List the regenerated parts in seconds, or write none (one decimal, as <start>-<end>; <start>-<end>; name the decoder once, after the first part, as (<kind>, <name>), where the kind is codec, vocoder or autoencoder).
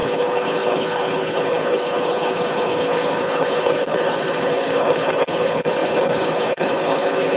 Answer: 0.0-7.4 (codec, HILCodec)